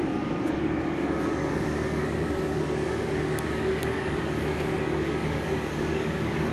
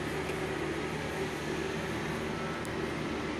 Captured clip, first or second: second